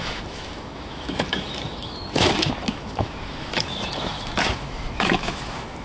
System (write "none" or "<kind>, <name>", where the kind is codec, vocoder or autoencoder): autoencoder, DAC-VAE